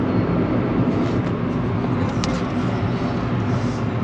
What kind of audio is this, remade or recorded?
recorded